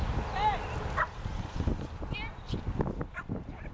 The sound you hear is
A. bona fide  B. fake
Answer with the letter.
A